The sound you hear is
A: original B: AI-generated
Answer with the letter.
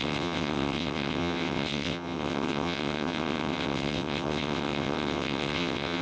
B